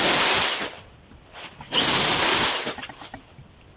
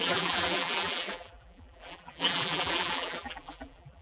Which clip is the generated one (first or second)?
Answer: second